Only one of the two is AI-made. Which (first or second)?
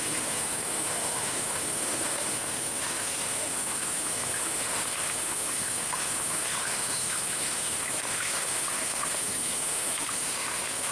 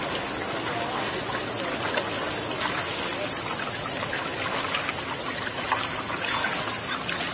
first